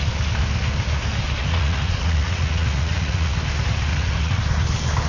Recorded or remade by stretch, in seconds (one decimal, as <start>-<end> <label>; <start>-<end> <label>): 0.0-1.4 recorded; 1.4-3.4 remade; 3.4-3.9 recorded; 3.9-4.4 remade; 4.4-5.1 recorded